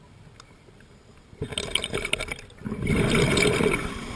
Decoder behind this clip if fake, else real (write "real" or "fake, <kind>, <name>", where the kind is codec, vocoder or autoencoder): real